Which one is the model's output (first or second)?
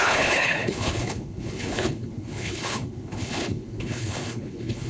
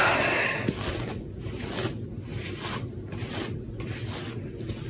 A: first